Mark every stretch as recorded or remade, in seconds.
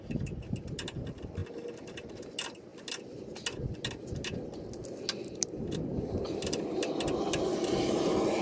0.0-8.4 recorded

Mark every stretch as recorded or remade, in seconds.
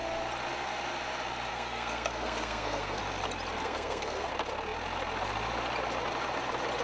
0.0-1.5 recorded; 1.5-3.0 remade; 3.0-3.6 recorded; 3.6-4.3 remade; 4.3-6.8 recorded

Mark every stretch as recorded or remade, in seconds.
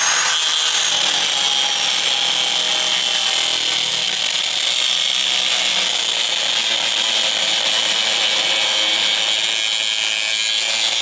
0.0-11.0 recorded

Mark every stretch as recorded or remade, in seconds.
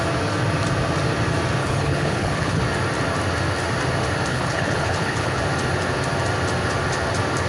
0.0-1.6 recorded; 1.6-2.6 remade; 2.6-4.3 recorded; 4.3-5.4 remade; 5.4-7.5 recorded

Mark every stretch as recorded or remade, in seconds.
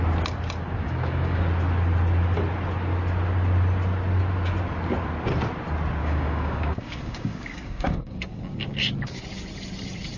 0.0-0.8 recorded; 0.8-1.4 remade; 1.4-6.0 recorded; 6.0-9.2 remade; 9.2-10.2 recorded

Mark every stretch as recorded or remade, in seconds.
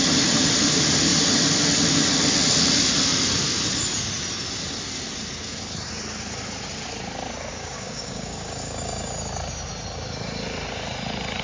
0.0-7.5 recorded; 7.5-9.1 remade; 9.1-11.4 recorded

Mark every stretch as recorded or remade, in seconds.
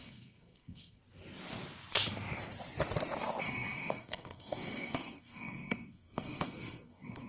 0.0-1.0 remade; 1.0-3.4 recorded; 3.4-7.3 remade